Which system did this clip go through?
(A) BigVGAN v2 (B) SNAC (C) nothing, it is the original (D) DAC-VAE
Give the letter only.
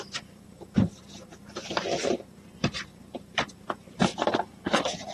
A